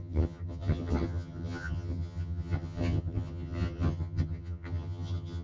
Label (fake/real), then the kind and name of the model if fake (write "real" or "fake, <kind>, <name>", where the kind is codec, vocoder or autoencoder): fake, vocoder, HiFi-GAN